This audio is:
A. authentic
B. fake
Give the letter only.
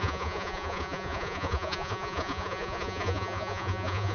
B